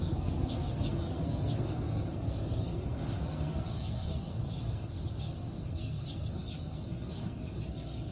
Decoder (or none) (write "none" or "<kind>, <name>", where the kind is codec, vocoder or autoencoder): codec, SNAC